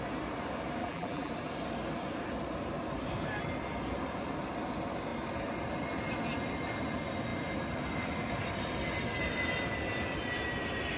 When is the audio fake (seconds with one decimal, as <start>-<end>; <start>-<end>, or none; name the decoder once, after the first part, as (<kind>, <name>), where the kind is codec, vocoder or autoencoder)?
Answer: 0.8-1.3 (vocoder, BigVGAN v2)